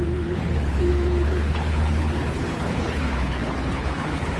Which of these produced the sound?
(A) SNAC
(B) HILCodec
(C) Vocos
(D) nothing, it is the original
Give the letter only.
B